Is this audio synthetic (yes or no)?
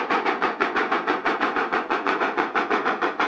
yes